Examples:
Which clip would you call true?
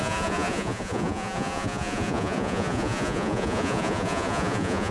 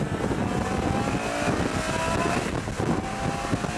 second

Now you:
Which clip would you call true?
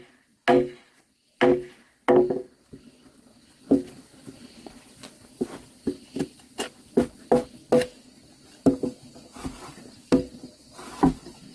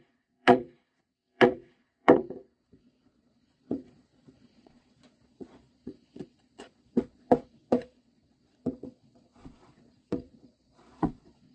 first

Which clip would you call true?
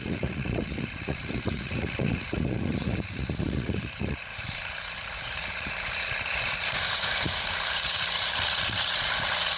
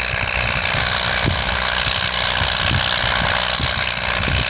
second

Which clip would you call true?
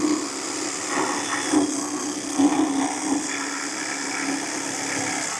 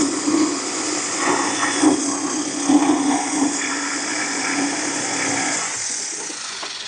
first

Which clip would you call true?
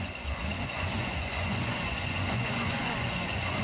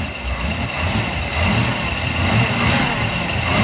second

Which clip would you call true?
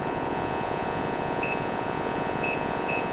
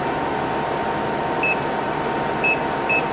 second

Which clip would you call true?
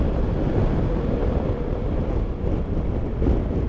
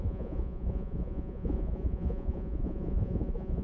first